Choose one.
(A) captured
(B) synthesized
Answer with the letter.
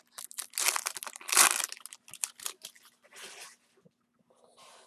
A